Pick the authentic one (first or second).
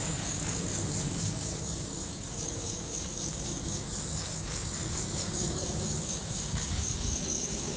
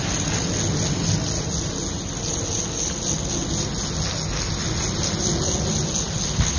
second